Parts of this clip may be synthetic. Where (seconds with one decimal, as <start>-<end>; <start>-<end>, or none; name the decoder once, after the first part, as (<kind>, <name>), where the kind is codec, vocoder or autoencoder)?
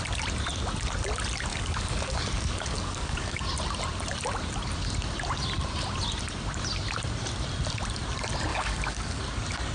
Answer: 1.5-3.4 (codec, DAC); 8.5-9.2